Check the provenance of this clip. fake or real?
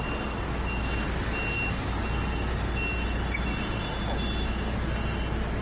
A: real